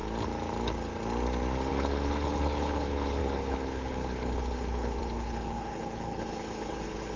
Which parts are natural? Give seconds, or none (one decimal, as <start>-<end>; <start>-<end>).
0.0-1.7